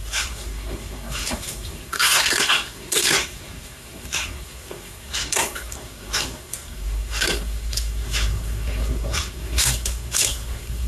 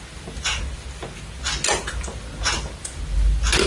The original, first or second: second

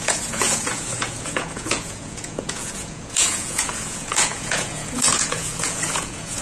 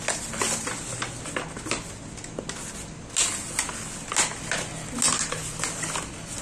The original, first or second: second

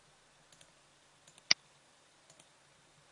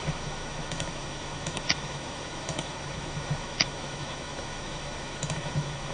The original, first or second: first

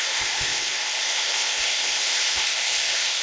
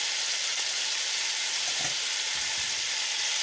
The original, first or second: second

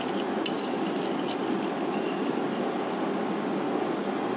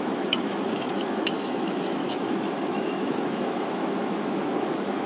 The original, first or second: first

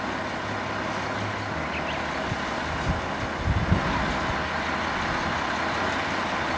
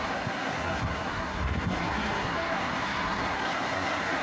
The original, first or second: first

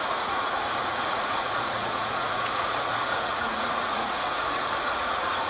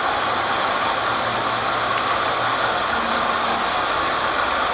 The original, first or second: second